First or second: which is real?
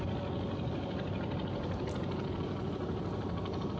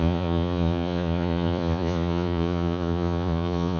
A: first